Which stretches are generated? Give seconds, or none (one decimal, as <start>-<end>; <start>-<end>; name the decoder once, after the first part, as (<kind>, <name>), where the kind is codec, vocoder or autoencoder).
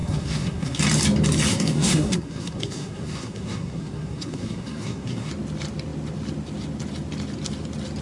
0.0-0.8 (codec, SNAC); 1.5-5.3